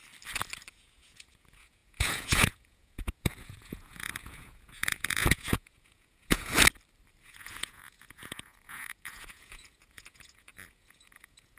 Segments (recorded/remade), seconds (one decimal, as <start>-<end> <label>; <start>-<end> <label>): 0.0-0.7 recorded; 0.7-6.5 remade; 6.5-7.2 recorded; 7.2-11.6 remade